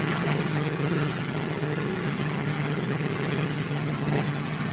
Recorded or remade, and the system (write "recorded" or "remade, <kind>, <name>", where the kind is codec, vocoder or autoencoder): remade, vocoder, HiFi-GAN